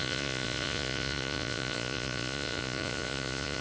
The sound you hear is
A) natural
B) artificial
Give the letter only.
B